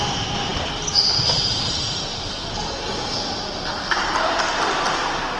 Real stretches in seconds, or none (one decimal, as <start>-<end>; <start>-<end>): 0.0-0.5; 1.0-2.1